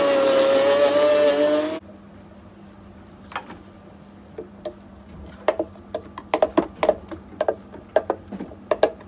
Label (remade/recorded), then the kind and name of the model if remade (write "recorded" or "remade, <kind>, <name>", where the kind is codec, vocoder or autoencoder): recorded